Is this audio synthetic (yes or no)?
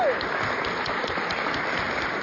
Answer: no